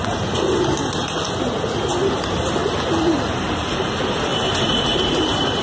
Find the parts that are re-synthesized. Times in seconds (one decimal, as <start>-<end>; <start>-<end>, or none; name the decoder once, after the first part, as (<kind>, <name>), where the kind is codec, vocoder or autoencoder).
0.0-0.8 (vocoder, BigVGAN v2); 2.1-2.6; 3.7-5.6